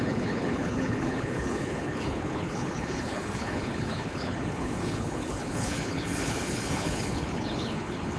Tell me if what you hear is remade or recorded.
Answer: remade